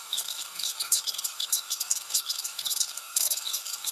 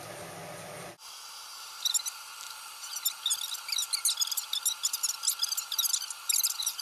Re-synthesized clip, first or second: first